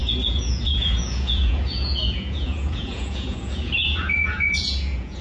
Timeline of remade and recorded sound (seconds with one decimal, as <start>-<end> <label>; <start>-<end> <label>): 0.0-5.2 remade

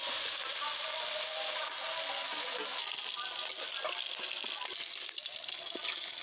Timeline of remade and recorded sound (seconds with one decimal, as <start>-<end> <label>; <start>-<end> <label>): 0.0-6.2 recorded

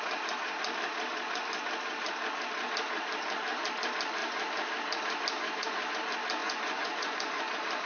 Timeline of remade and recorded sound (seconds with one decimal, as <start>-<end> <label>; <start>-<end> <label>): 0.0-6.4 recorded; 6.4-7.5 remade; 7.5-7.9 recorded

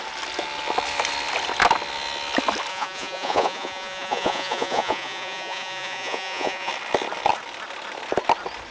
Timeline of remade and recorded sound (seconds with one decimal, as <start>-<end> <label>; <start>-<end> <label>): 0.0-2.7 recorded; 2.7-6.7 remade; 6.7-8.7 recorded

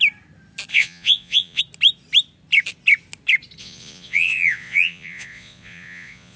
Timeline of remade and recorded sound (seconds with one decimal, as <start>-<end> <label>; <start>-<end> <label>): 0.0-0.7 recorded; 0.7-1.6 remade; 1.6-3.6 recorded; 3.6-6.4 remade

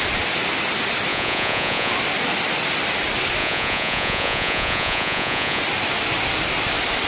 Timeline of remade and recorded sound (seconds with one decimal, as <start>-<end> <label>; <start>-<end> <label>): 0.0-1.1 recorded; 1.1-1.9 remade; 1.9-3.4 recorded; 3.4-5.6 remade; 5.6-7.1 recorded

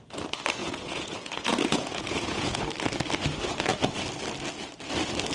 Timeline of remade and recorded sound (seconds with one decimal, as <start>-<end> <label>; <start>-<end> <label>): 0.0-0.6 recorded; 0.6-2.6 remade; 2.6-5.3 recorded